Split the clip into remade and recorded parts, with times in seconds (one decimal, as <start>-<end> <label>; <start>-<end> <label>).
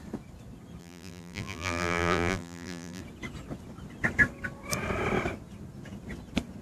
0.0-0.8 recorded; 0.8-3.0 remade; 3.0-6.6 recorded